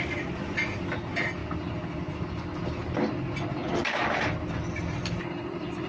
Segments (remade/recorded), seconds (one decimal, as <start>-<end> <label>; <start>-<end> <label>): 0.0-5.9 recorded